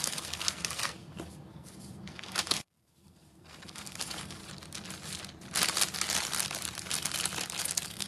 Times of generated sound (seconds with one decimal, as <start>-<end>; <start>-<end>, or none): 0.0-4.4; 7.6-8.1